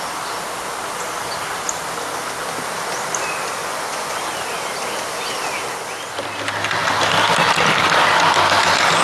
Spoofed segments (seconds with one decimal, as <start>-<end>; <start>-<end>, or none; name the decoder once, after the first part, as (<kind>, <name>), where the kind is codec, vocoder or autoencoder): 3.6-4.2 (vocoder, Vocos)